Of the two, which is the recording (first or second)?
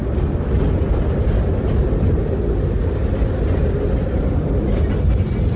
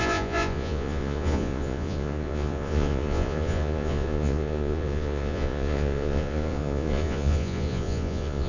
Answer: first